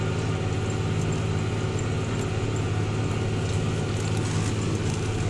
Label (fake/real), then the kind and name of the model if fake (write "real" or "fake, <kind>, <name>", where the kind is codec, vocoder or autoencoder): real